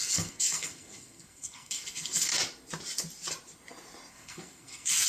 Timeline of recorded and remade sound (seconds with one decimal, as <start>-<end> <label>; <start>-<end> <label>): 0.0-2.3 remade; 2.3-4.1 recorded; 4.1-5.1 remade